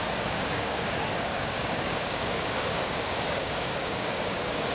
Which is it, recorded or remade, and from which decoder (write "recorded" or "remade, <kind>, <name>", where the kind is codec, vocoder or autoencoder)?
remade, codec, DAC